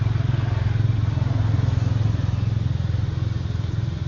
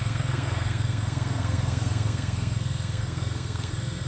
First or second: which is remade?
second